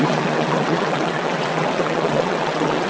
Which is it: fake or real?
fake